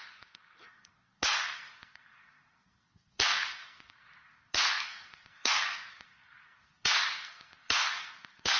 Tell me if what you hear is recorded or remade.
remade